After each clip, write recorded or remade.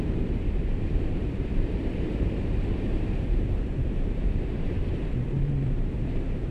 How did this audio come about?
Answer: remade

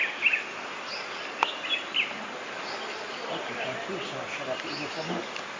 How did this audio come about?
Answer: recorded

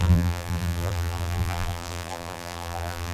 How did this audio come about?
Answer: remade